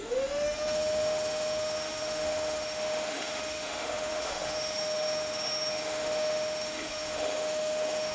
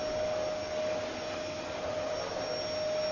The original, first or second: second